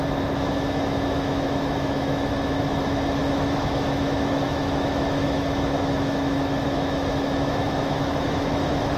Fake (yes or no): yes